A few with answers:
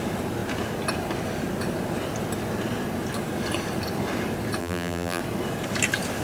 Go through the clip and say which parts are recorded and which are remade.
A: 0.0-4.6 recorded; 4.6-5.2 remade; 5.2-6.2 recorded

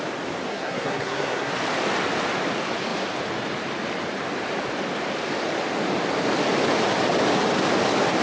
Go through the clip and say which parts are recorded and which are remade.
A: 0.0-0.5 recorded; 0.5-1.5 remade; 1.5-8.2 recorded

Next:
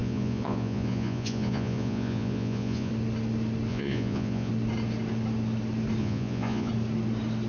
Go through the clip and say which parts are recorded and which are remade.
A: 0.0-2.9 remade; 2.9-3.7 recorded; 3.7-4.5 remade; 4.5-6.0 recorded; 6.0-6.7 remade; 6.7-7.5 recorded

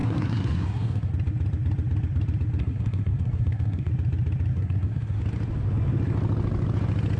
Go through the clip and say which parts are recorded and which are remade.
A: 0.0-1.1 remade; 1.1-2.6 recorded; 2.6-3.9 remade; 3.9-4.5 recorded; 4.5-5.2 remade; 5.2-7.2 recorded